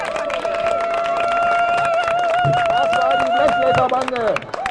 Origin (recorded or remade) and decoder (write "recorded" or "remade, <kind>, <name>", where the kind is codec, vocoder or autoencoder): recorded